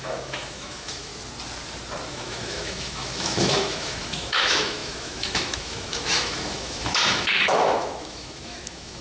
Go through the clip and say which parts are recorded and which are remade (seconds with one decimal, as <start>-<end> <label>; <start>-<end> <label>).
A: 0.0-1.1 remade; 1.1-2.1 recorded; 2.1-9.0 remade